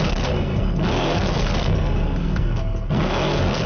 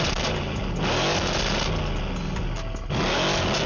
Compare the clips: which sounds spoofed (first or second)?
first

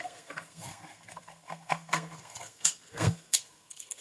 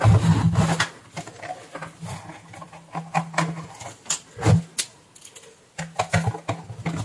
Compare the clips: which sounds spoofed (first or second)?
first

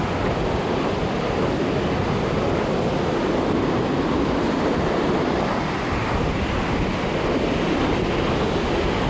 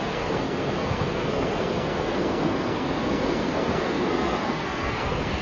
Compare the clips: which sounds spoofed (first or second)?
second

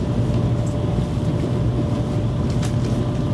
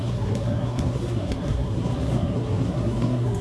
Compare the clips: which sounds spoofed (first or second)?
second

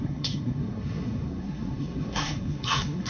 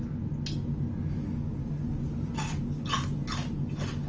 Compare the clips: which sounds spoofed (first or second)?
first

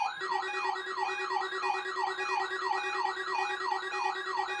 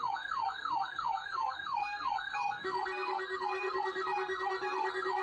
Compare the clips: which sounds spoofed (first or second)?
second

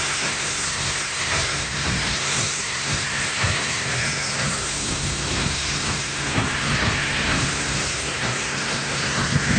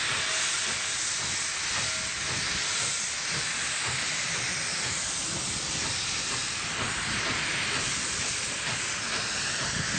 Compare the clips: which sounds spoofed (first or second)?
first